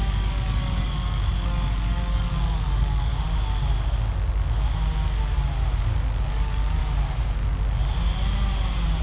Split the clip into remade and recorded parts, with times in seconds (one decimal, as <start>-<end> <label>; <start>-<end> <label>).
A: 0.0-3.1 remade; 3.1-5.8 recorded; 5.8-6.8 remade; 6.8-9.0 recorded